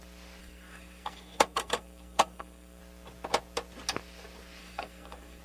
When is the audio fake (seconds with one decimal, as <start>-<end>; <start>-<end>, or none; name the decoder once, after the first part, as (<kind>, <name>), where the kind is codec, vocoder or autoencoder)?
0.4-2.8 (codec, SNAC); 4.6-5.4